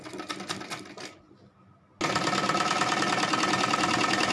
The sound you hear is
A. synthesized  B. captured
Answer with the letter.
B